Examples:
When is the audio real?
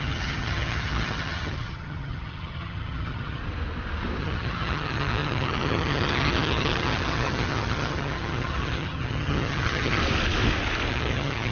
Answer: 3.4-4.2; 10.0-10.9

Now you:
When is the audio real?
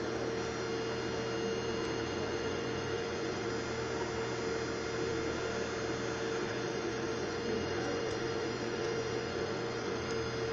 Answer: 0.0-2.0; 3.5-6.4; 10.1-10.5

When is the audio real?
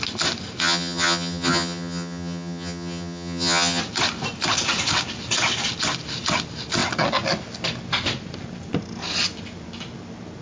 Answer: 0.0-0.6; 3.8-10.4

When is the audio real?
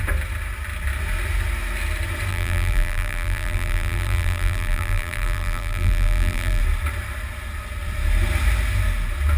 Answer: 0.0-2.3; 6.6-9.4